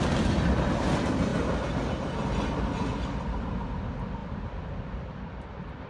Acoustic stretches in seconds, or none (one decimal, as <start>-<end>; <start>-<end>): 0.0-5.9